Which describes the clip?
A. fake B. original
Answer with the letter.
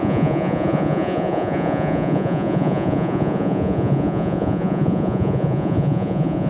A